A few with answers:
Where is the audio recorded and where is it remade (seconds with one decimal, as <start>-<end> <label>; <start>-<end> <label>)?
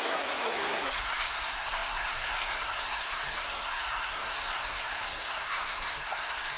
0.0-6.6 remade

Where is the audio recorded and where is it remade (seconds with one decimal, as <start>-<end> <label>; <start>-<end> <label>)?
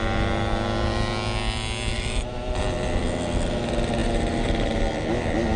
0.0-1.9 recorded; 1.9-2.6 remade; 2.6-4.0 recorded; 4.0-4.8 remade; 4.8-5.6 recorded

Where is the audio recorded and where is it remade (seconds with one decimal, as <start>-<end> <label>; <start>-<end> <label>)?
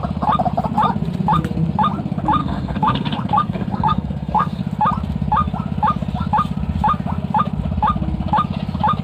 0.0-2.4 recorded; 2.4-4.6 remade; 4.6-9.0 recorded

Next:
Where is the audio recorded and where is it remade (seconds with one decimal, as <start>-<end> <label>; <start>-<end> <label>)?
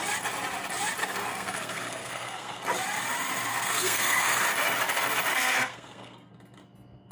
0.0-1.0 recorded; 1.0-2.6 remade; 2.6-3.5 recorded; 3.5-4.4 remade; 4.4-5.3 recorded; 5.3-6.3 remade; 6.3-7.1 recorded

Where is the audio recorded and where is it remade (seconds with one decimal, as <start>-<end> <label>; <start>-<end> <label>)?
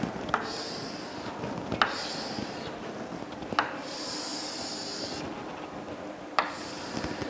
0.0-7.3 recorded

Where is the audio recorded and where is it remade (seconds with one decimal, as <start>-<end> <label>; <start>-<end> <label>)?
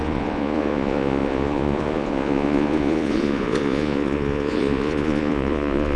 0.0-6.0 remade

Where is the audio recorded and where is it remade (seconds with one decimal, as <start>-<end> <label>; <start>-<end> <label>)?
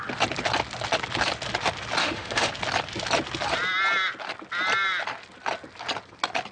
0.0-2.0 recorded; 2.0-2.5 remade; 2.5-6.5 recorded